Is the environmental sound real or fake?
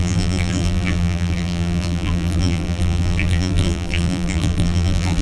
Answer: fake